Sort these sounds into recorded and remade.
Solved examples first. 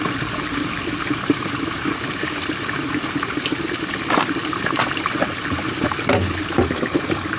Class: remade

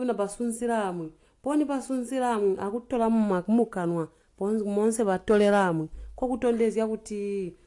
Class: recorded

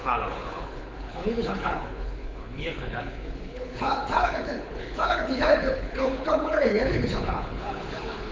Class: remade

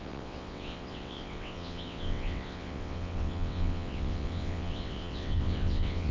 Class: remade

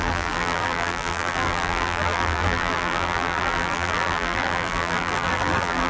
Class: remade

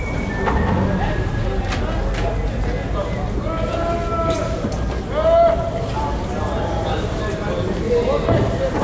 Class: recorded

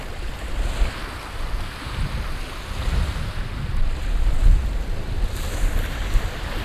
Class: recorded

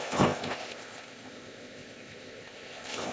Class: remade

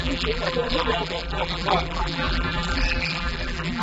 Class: remade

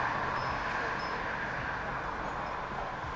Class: recorded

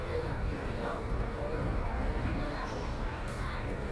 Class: remade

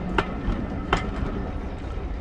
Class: recorded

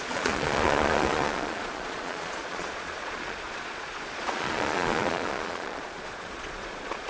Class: remade